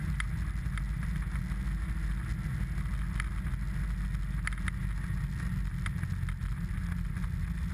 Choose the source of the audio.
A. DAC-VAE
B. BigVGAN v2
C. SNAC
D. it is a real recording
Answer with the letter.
D